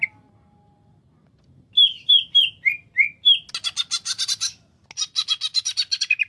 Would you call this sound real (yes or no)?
yes